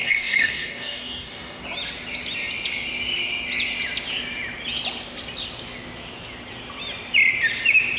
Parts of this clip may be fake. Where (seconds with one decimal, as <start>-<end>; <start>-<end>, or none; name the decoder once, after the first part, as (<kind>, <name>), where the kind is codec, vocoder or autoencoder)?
0.0-1.6 (codec, DAC)

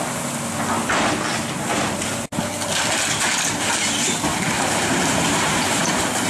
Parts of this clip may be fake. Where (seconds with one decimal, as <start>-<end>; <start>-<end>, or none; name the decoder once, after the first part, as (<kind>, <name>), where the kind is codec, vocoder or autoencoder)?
4.3-6.3 (vocoder, BigVGAN v2)

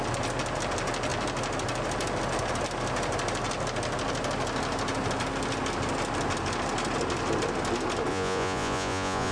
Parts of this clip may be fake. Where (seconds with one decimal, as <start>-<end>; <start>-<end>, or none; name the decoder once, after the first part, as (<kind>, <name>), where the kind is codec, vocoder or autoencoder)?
8.1-9.3 (vocoder, Vocos)

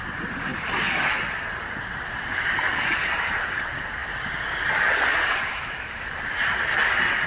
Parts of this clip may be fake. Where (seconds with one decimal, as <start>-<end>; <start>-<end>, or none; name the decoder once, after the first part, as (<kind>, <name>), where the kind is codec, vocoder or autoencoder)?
5.5-6.1 (autoencoder, DAC-VAE)